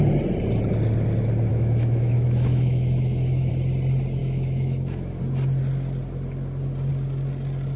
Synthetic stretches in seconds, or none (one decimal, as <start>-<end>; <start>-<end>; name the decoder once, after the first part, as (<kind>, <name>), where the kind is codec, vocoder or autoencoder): 1.5-3.5 (autoencoder, DAC-VAE); 4.2-5.2